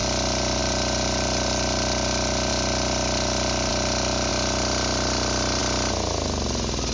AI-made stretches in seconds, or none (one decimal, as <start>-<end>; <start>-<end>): none